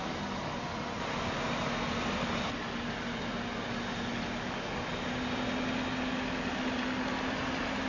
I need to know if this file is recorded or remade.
recorded